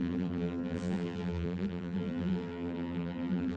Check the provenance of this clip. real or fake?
fake